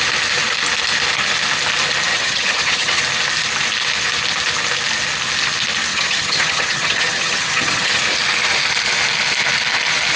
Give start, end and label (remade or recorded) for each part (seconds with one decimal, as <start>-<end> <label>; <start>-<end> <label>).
0.0-2.1 recorded; 2.1-3.0 remade; 3.0-5.9 recorded; 5.9-8.0 remade; 8.0-10.2 recorded